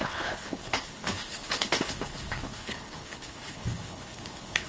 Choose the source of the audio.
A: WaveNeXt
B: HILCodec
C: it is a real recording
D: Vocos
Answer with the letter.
B